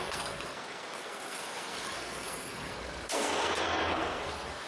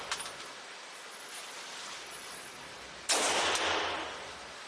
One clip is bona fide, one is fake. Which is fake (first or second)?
first